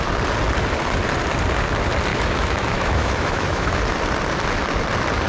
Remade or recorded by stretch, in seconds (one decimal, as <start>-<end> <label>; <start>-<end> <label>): 0.0-2.1 recorded; 2.1-3.8 remade; 3.8-5.3 recorded